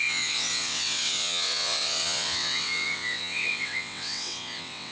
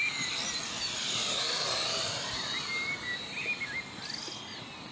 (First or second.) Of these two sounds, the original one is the second